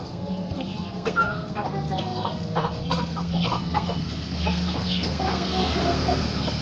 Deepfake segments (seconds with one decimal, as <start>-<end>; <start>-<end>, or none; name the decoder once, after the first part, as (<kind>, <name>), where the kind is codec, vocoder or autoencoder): 0.0-6.6 (codec, SNAC)